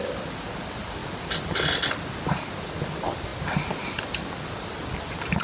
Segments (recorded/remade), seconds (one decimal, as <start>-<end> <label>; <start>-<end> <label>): 0.0-5.4 recorded